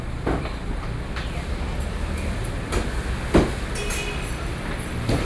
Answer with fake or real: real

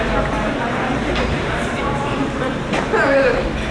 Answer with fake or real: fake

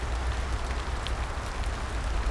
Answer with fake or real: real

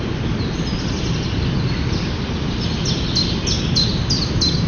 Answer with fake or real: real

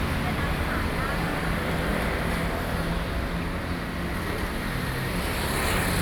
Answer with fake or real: real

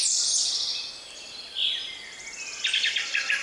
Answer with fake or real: real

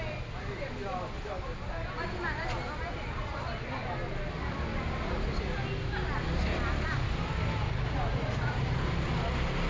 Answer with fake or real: real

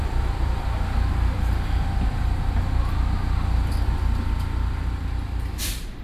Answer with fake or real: fake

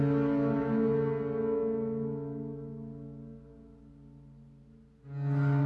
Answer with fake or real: real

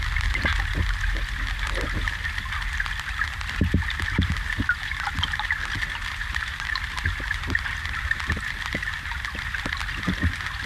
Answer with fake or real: real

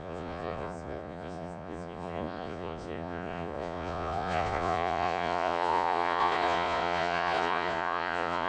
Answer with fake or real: fake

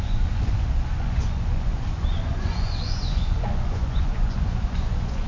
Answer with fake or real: fake